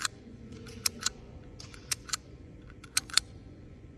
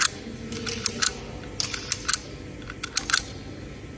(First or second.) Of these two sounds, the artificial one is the first